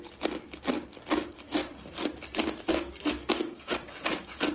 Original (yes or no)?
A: yes